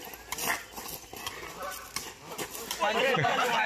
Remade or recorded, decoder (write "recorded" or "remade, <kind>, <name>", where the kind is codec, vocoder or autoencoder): recorded